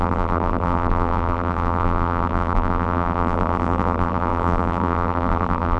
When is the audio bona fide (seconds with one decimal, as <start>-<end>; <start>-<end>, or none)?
none